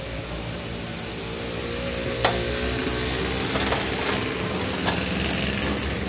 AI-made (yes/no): no